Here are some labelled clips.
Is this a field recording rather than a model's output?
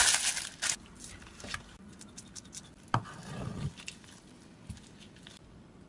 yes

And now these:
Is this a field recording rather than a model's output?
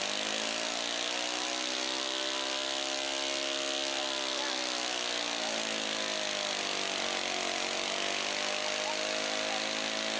yes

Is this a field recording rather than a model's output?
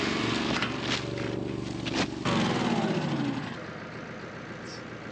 yes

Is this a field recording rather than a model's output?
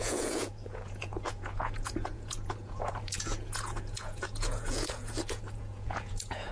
no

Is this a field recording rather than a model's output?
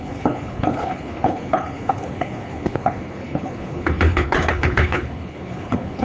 no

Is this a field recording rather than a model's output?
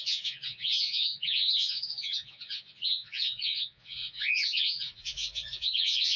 no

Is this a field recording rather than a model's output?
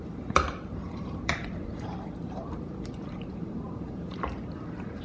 no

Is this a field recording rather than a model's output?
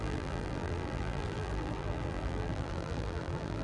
no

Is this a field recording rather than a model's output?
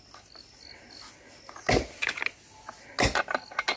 yes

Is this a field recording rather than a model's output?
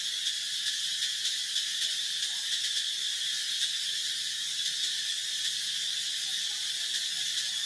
yes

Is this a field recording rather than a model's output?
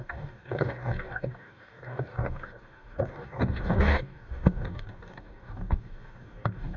no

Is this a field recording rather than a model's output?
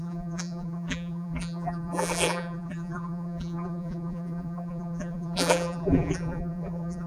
no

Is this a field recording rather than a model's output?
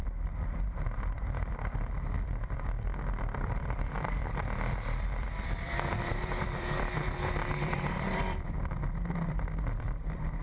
no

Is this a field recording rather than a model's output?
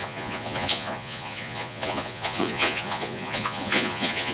no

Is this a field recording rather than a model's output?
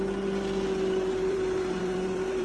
no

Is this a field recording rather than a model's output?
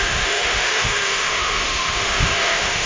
no